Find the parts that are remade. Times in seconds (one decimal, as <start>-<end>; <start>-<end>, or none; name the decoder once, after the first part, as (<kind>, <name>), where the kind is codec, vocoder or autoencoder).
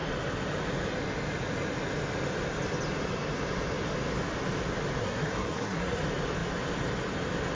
5.0-6.0 (codec, SNAC)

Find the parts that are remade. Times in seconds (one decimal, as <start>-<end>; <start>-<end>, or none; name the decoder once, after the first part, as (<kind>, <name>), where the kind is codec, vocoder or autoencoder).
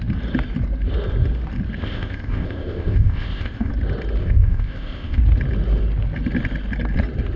1.8-3.7 (codec, ZipCodec); 4.2-5.2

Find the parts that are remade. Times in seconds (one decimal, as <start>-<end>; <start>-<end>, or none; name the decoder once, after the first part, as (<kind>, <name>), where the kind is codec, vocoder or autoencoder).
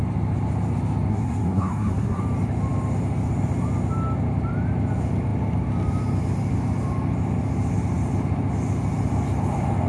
1.1-2.2 (codec, SNAC)